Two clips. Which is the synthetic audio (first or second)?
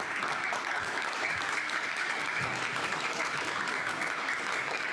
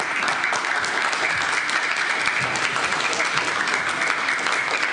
first